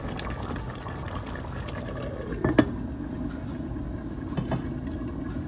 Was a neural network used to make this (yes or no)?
no